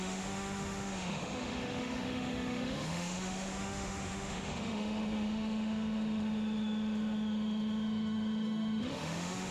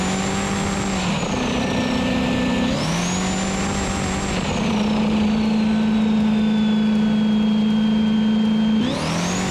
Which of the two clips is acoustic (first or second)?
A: second